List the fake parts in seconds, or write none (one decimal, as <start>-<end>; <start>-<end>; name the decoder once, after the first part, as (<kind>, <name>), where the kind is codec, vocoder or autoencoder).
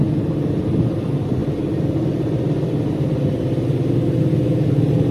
none